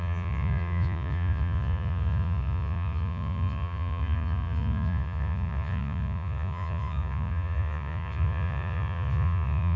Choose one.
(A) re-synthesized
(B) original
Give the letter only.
A